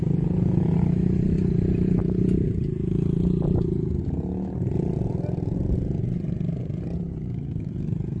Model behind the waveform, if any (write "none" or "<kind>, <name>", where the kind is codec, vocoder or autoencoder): none